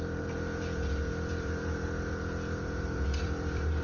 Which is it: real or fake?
fake